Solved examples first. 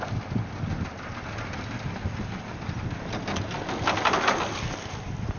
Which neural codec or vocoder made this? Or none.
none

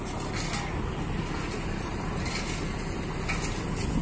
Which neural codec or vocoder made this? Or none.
none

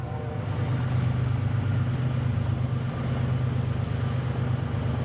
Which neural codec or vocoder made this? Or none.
none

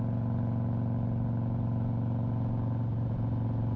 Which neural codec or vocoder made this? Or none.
none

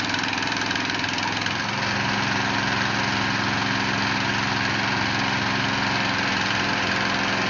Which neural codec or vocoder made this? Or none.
none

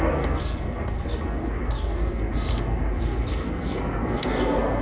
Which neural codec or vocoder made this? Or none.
codec, SNAC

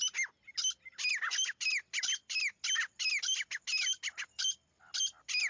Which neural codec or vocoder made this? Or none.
none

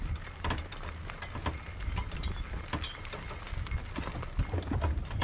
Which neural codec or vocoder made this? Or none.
none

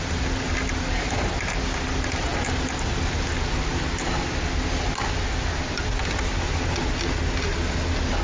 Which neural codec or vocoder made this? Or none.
none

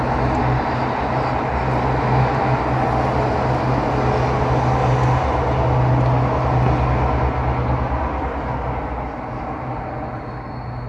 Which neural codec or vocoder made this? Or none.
none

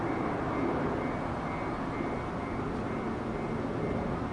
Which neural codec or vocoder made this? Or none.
none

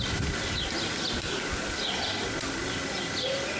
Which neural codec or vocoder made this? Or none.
none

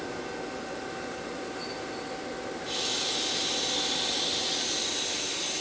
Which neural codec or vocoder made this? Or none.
none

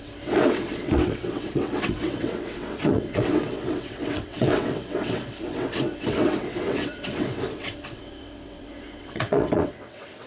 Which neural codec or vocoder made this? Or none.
vocoder, WaveNeXt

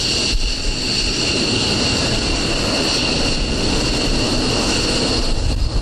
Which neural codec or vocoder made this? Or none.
none